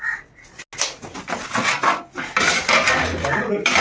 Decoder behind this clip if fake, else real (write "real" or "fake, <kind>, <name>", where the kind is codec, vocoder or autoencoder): real